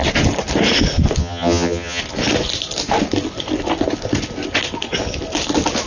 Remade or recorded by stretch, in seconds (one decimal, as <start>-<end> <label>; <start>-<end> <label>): 0.0-1.2 recorded; 1.2-2.0 remade; 2.0-5.9 recorded